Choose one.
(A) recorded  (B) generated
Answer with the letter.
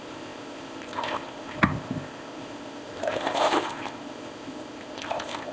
B